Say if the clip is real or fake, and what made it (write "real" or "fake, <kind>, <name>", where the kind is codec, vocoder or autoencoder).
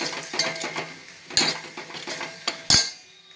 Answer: real